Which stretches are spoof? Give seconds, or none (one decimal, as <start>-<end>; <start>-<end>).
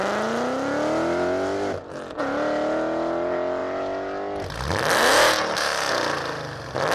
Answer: none